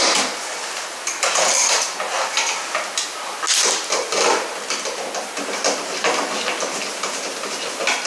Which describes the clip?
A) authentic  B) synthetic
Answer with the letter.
A